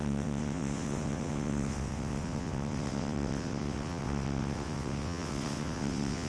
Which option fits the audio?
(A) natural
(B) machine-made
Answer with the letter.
B